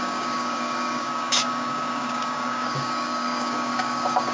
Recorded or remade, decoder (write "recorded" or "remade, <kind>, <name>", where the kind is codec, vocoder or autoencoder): remade, codec, DAC